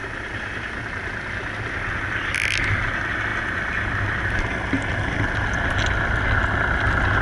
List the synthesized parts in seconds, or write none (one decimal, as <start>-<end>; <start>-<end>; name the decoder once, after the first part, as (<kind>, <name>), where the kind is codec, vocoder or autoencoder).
none